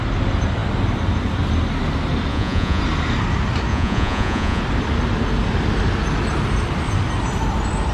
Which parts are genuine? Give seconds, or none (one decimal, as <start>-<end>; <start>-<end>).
0.0-2.3; 2.8-3.7; 4.6-7.9